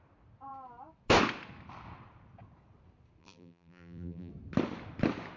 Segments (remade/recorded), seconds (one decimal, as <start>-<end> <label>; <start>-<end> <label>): 0.0-3.2 recorded; 3.2-4.3 remade; 4.3-5.4 recorded